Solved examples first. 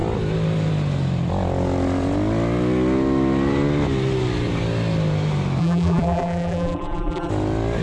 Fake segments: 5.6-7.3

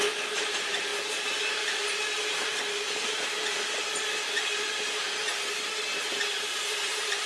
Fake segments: 5.9-7.3